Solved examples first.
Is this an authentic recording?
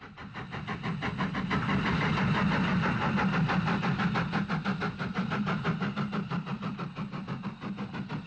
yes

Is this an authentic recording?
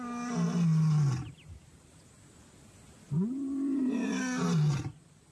yes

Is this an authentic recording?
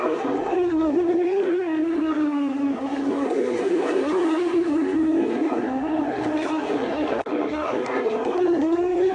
no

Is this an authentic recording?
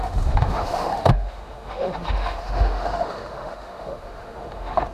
no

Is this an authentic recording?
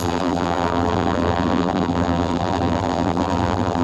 no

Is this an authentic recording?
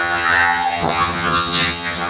no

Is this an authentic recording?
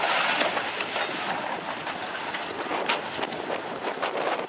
yes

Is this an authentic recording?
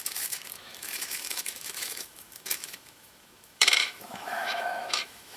no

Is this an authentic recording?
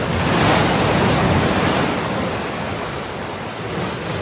yes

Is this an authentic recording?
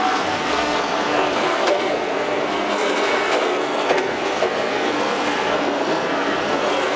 no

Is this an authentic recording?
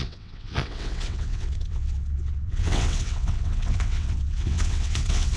no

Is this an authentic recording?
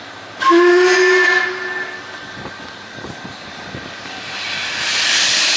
yes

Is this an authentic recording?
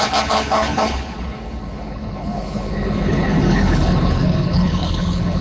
no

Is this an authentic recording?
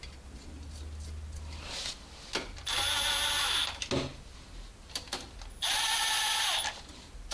yes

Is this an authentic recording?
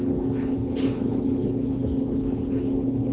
no